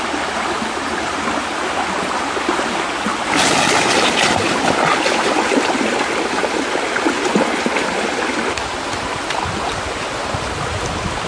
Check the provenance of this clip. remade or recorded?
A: recorded